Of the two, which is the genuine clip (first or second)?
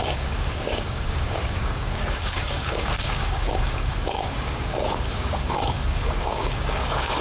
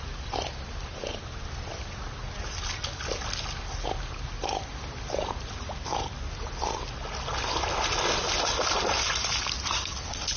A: second